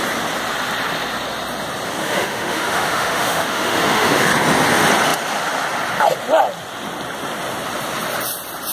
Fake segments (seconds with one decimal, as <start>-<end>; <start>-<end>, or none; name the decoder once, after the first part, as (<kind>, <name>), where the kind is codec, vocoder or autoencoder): 2.0-4.3 (autoencoder, DAC-VAE)